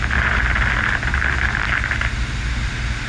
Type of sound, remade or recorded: recorded